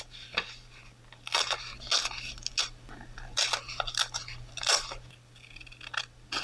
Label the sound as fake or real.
real